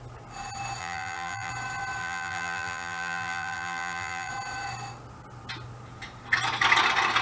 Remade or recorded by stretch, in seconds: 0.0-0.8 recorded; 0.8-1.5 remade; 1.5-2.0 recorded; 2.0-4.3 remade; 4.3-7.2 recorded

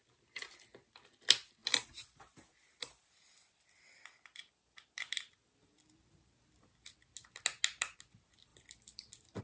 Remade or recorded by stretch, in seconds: 0.0-1.6 recorded; 1.6-6.3 remade; 6.3-8.5 recorded; 8.5-9.4 remade